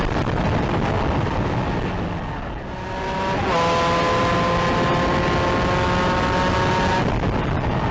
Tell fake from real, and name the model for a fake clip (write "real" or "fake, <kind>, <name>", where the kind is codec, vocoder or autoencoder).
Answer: real